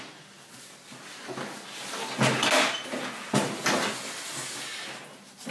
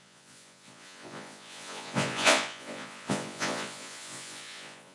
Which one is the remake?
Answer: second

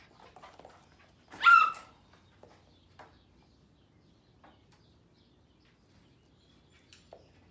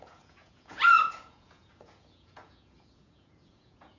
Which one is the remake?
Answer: second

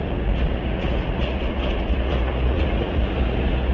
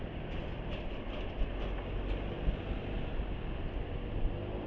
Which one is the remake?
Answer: first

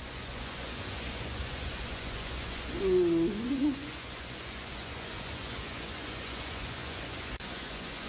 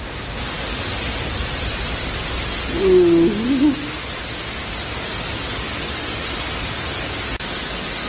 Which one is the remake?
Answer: first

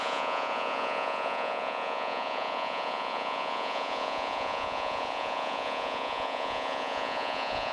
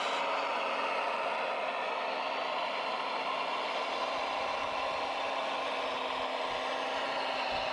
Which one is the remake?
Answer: first